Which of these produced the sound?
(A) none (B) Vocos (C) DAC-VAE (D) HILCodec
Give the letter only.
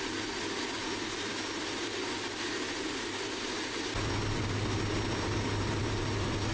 A